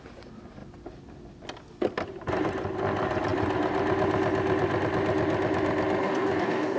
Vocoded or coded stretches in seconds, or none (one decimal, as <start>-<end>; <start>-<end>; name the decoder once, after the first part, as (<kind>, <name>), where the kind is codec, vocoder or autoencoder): 6.0-6.8 (codec, DAC)